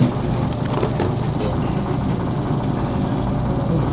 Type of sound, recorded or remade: recorded